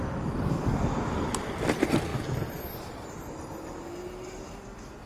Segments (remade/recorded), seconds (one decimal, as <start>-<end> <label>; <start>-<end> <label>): 0.0-5.1 recorded